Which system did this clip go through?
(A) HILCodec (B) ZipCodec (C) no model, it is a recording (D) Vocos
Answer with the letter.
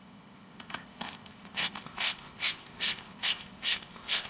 B